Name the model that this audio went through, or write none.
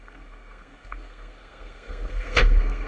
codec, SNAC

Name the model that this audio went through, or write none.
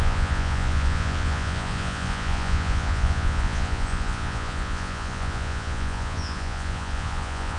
vocoder, Vocos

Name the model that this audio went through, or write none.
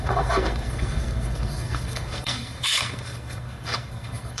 codec, SNAC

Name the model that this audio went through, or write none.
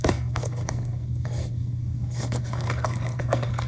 codec, SNAC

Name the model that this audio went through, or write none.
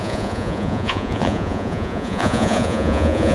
vocoder, Vocos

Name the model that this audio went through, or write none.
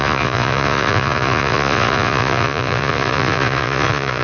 vocoder, Vocos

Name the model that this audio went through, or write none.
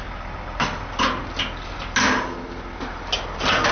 none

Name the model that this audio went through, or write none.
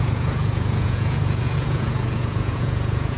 vocoder, Vocos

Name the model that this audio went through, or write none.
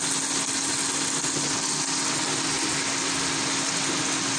none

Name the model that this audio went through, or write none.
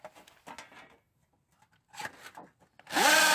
none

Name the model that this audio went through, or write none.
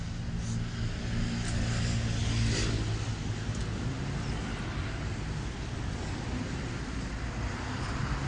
none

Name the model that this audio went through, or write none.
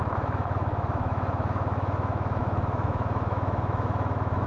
autoencoder, DAC-VAE